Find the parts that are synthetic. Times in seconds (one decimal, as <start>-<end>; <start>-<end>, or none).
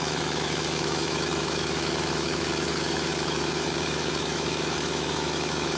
0.0-5.8